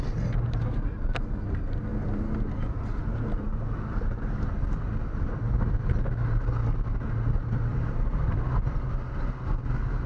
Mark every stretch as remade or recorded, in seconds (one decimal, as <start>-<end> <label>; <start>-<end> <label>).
0.0-7.7 recorded; 7.7-8.4 remade; 8.4-10.1 recorded